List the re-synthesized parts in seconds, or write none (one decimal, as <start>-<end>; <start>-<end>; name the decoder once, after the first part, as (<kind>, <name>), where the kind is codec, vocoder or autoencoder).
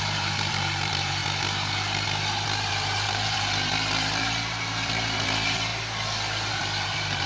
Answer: 0.0-1.2 (vocoder, BigVGAN v2); 2.7-5.7; 6.5-7.3